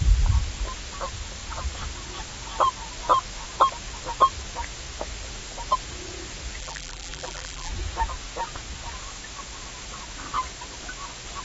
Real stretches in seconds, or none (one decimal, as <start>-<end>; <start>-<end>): 0.0-6.6; 7.7-11.4